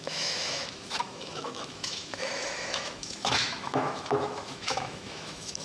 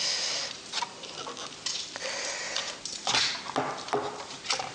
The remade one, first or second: first